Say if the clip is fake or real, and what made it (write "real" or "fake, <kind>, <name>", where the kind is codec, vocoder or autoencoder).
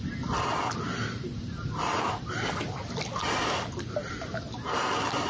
real